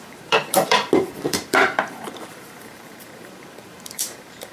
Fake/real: fake